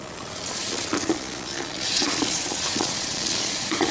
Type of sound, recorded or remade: remade